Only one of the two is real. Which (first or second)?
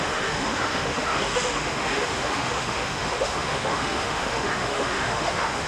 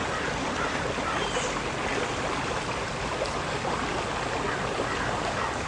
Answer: second